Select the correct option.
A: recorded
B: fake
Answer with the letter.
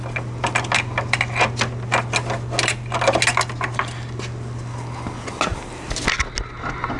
A